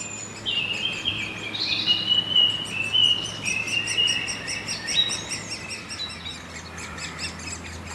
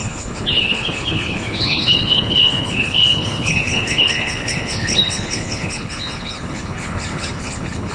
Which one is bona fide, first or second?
first